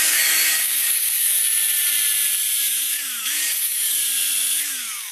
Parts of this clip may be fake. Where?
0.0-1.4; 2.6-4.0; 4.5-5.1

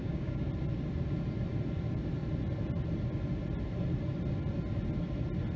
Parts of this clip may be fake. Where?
0.0-0.5

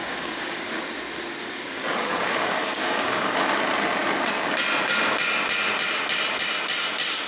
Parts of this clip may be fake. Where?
0.0-0.7; 1.4-3.4

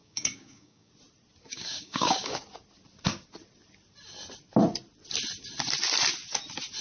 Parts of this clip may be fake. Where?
0.0-0.9; 1.5-2.4